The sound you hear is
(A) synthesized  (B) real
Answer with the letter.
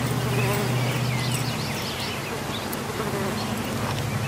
B